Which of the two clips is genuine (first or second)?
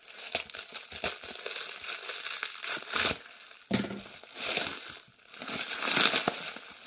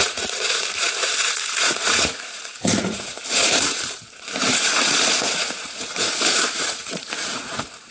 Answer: first